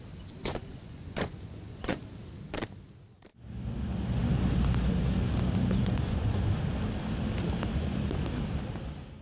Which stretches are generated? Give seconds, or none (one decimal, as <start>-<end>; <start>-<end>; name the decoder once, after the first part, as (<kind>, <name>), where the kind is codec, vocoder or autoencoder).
0.4-2.1 (vocoder, Vocos); 5.8-6.6; 7.7-8.2